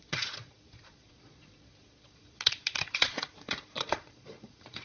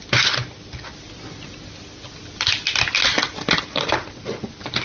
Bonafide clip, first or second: second